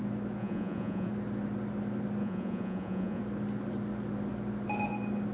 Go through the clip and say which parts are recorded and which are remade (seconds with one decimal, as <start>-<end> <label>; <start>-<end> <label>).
0.0-0.4 recorded; 0.4-1.1 remade; 1.1-2.2 recorded; 2.2-3.2 remade; 3.2-5.3 recorded